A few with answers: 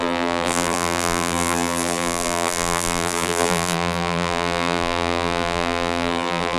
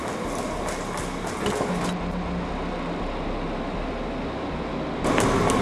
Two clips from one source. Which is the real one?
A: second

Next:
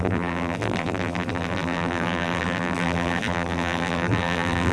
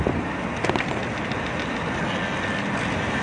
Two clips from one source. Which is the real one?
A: second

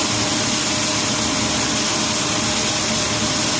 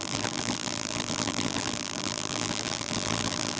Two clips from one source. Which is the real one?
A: first